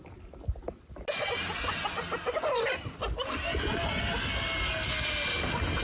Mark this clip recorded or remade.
recorded